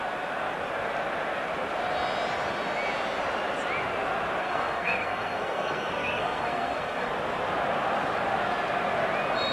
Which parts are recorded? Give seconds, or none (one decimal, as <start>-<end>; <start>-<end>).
0.0-4.4; 7.1-9.5